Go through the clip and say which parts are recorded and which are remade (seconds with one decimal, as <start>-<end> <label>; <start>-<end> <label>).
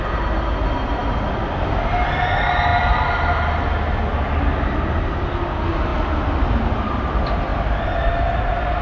0.0-8.8 recorded